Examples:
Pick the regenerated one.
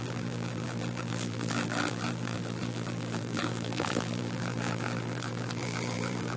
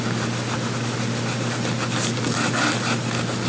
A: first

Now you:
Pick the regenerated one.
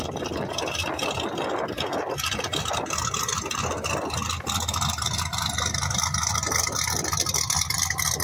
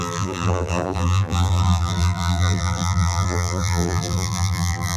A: second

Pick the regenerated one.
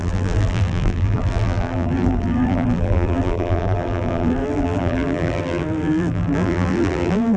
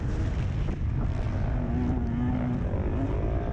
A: first